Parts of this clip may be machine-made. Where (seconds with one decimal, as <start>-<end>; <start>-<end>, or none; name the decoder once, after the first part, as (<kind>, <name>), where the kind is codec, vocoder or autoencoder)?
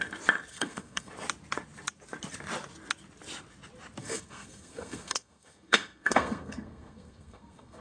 0.5-1.1 (codec, SNAC); 4.0-7.8